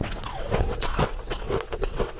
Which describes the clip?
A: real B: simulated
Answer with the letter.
B